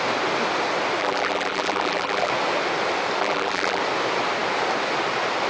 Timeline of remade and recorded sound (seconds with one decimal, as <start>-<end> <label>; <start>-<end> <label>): 0.0-1.0 recorded; 1.0-2.3 remade; 2.3-3.2 recorded; 3.2-3.8 remade; 3.8-5.5 recorded